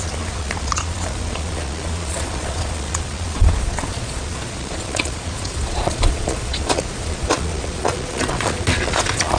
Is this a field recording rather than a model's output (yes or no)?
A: no